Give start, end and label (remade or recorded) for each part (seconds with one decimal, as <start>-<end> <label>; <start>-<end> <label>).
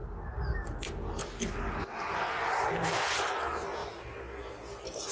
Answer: 0.0-5.1 recorded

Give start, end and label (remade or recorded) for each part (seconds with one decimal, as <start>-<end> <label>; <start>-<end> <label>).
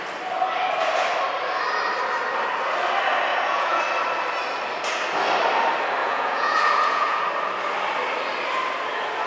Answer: 0.0-3.3 recorded; 3.3-3.8 remade; 3.8-6.0 recorded; 6.0-7.2 remade; 7.2-9.3 recorded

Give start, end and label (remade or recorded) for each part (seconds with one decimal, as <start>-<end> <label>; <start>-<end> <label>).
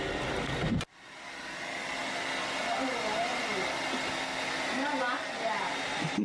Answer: 0.0-6.2 recorded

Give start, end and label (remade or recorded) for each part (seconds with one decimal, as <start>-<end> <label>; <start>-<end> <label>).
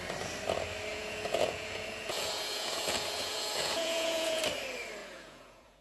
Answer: 0.0-0.9 recorded; 0.9-4.4 remade; 4.4-5.0 recorded; 5.0-5.8 remade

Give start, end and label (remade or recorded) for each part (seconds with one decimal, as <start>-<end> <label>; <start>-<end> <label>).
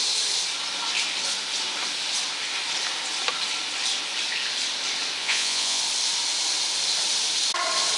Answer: 0.0-5.2 recorded; 5.2-5.8 remade; 5.8-8.0 recorded